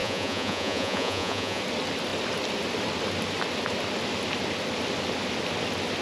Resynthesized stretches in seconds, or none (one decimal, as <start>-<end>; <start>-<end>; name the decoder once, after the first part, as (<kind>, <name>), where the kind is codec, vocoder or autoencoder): 0.0-1.6 (vocoder, Vocos)